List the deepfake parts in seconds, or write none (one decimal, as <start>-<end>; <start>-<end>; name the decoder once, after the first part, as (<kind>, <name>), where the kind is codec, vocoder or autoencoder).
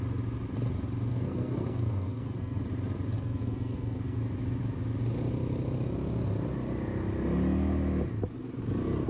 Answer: 1.1-2.6 (codec, SNAC); 3.1-4.2